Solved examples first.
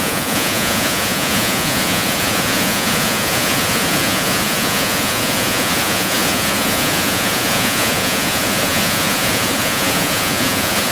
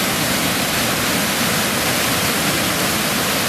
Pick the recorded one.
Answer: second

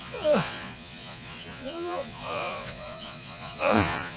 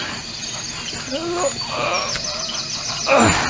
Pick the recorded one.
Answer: second